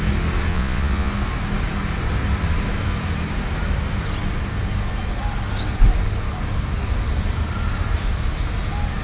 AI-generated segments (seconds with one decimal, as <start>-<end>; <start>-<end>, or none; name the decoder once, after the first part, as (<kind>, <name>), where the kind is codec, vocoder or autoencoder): 0.5-1.1 (vocoder, Vocos)